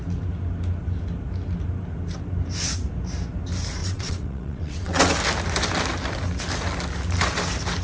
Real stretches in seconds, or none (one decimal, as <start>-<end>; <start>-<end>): 0.0-3.8; 5.1-7.8